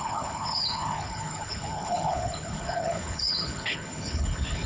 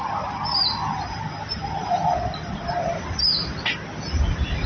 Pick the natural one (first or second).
second